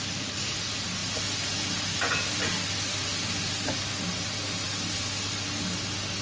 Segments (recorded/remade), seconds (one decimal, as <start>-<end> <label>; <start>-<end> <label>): 0.0-6.2 recorded